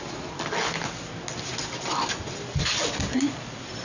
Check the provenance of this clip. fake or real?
real